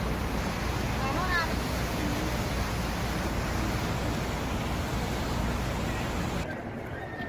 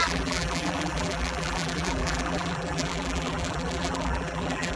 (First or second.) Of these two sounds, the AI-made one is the second